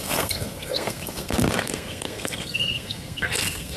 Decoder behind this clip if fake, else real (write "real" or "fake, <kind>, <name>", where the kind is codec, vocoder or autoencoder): fake, codec, SNAC